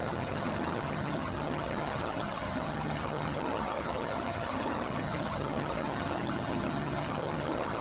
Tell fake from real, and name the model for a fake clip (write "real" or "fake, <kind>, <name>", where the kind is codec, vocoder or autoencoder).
fake, vocoder, HiFi-GAN